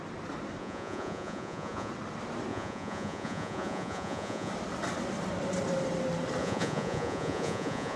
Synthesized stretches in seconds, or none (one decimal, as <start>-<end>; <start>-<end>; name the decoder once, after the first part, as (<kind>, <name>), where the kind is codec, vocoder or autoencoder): 0.6-1.9 (vocoder, Vocos); 2.5-4.5; 6.4-8.0